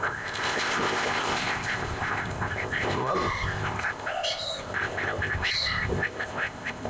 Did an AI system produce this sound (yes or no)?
yes